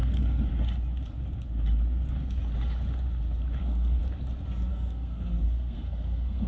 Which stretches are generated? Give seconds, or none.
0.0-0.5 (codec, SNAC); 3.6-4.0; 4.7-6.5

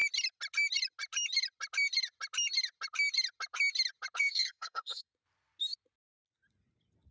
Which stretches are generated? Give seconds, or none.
4.2-5.1 (codec, SNAC)